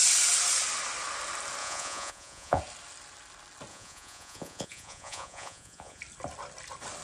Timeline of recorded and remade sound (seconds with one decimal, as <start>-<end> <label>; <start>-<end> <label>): 0.0-1.6 recorded; 1.6-2.6 remade; 2.6-3.7 recorded; 3.7-6.0 remade; 6.0-7.0 recorded